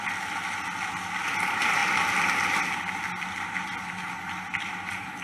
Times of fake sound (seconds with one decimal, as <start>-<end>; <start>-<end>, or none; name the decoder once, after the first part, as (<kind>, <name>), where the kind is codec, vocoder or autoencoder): none